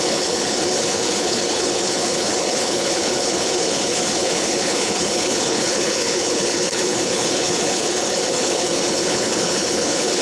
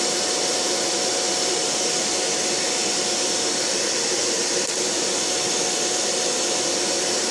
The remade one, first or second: first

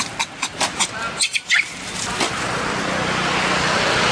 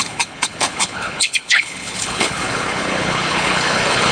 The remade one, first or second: second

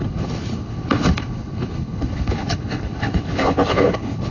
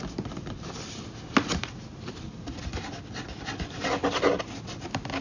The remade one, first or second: first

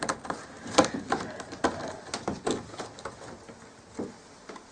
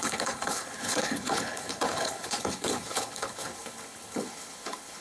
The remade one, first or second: second